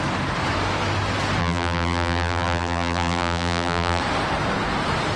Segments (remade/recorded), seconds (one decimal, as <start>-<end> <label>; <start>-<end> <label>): 0.0-1.4 recorded; 1.4-4.0 remade; 4.0-5.2 recorded